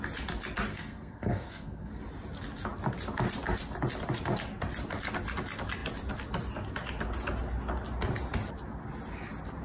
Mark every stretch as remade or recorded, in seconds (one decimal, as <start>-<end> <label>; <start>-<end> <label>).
0.0-0.7 recorded; 0.7-2.0 remade; 2.0-9.6 recorded